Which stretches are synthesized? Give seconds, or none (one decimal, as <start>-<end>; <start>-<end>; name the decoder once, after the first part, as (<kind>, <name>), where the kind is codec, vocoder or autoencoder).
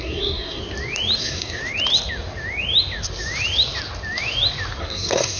0.0-0.6 (codec, SNAC); 1.2-1.6; 4.8-5.4